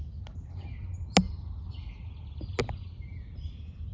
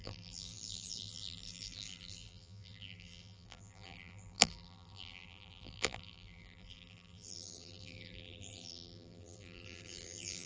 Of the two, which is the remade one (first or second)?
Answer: second